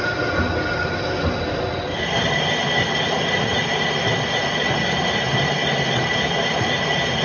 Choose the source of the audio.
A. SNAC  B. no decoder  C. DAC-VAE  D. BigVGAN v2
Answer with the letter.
B